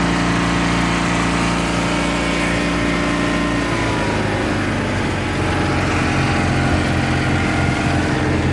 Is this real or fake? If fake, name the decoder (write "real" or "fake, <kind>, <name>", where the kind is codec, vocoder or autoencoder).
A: real